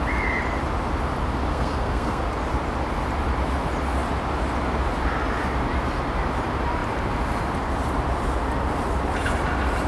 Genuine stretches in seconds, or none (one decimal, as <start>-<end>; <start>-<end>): 0.0-1.5; 2.2-9.9